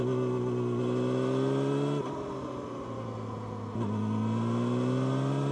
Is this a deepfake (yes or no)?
no